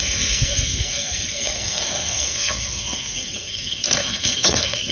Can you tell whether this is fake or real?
fake